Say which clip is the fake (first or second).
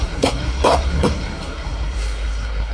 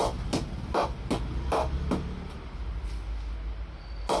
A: first